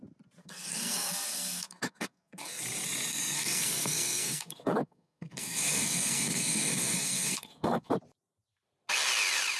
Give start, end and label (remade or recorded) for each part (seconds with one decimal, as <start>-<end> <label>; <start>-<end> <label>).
0.0-0.4 recorded; 0.4-2.6 remade; 2.6-3.1 recorded; 3.1-7.9 remade; 7.9-9.6 recorded